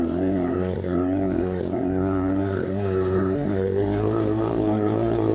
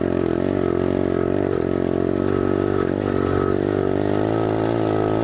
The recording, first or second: second